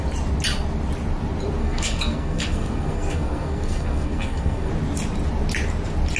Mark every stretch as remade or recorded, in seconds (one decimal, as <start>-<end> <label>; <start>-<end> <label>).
0.0-1.6 recorded; 1.6-4.7 remade; 4.7-6.2 recorded